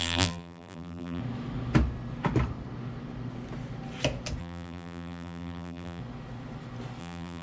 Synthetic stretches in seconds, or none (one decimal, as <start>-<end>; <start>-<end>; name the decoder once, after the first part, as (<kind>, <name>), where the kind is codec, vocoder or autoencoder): 0.0-1.2 (vocoder, BigVGAN v2); 4.4-6.0; 7.0-7.4